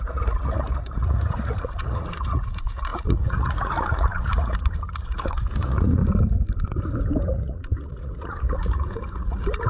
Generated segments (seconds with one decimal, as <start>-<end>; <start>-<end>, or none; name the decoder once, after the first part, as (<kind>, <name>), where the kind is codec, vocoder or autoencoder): 0.0-6.0 (vocoder, Vocos); 7.3-9.7